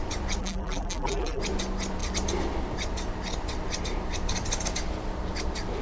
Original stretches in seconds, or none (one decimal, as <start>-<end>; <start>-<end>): 0.0-0.4; 1.4-5.8